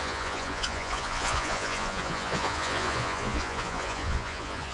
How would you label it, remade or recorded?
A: remade